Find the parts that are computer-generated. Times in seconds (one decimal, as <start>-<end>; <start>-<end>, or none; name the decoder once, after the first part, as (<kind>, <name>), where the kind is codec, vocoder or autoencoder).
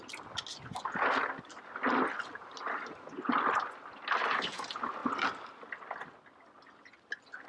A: none